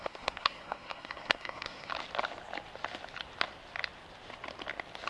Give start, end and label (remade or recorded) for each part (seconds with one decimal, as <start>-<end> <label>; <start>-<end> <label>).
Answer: 0.0-1.9 remade; 1.9-5.1 recorded